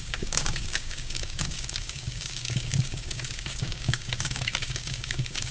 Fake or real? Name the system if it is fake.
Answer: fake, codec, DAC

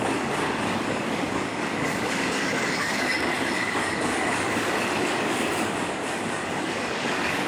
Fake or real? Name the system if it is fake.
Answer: fake, codec, DAC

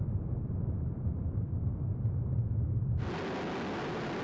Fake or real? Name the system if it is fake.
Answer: real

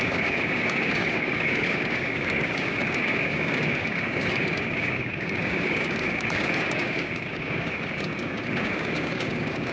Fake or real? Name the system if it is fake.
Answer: fake, codec, DAC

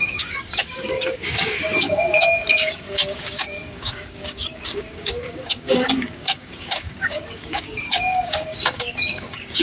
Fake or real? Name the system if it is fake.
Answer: fake, codec, DAC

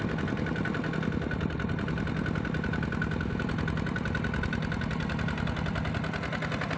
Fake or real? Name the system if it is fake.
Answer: real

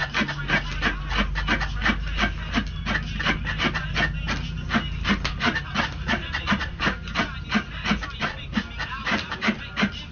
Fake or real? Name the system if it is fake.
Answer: real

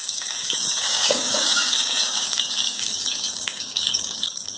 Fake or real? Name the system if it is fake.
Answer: fake, codec, DAC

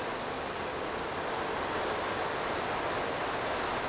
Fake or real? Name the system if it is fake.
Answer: real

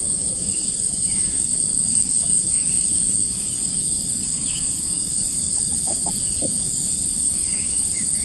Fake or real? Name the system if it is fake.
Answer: fake, codec, DAC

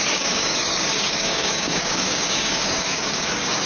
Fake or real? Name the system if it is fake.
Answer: fake, codec, DAC